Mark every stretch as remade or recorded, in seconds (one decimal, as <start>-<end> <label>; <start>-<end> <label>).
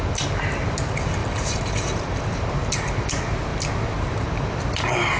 0.0-1.2 recorded; 1.2-2.2 remade; 2.2-5.2 recorded